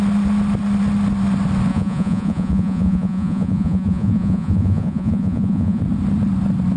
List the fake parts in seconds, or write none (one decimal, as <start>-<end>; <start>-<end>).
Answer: 1.7-5.8